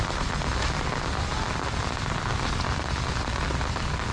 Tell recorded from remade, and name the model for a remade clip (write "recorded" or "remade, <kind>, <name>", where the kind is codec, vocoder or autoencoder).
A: recorded